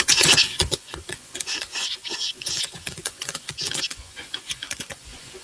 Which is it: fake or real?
fake